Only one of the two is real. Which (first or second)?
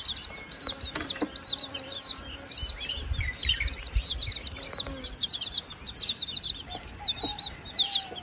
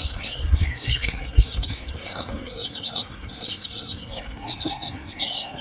first